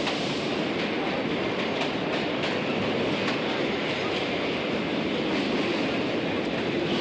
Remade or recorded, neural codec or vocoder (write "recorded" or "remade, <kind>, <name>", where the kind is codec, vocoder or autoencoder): recorded